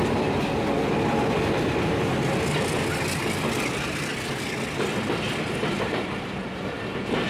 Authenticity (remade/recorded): recorded